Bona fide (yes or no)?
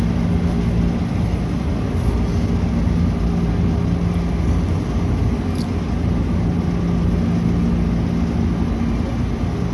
yes